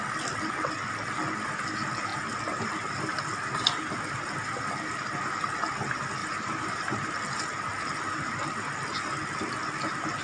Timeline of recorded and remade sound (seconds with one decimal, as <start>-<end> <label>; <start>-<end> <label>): 0.0-6.2 recorded; 6.2-7.1 remade; 7.1-10.2 recorded